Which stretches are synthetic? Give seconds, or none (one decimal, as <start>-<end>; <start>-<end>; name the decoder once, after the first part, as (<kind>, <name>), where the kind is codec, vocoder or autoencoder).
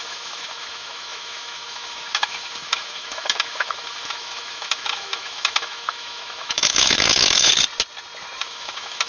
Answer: 0.0-7.5 (autoencoder, DAC-VAE); 8.4-9.1